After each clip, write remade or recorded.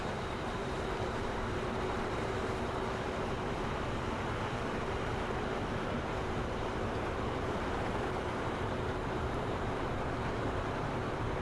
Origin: remade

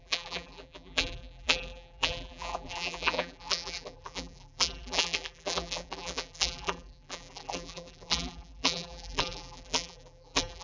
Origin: remade